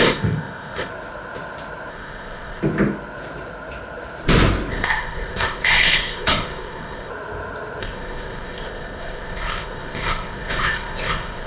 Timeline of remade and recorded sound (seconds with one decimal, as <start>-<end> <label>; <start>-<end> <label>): 0.0-0.9 remade; 0.9-1.9 recorded; 1.9-2.6 remade; 2.6-4.7 recorded; 4.7-7.1 remade; 7.1-7.8 recorded; 7.8-11.5 remade